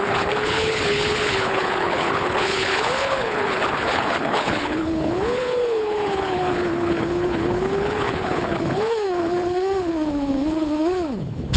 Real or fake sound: fake